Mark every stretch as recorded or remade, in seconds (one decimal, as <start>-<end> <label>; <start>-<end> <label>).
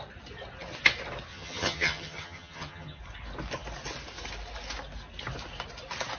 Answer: 0.0-1.3 recorded; 1.3-3.0 remade; 3.0-6.2 recorded